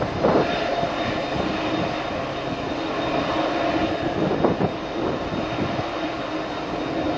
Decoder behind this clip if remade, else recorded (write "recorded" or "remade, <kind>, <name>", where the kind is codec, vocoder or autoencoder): recorded